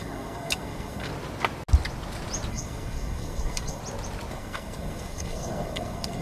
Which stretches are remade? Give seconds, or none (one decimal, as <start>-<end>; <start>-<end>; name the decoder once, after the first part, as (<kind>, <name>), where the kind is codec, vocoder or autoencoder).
0.0-1.1 (codec, SNAC); 2.5-3.8; 4.3-6.2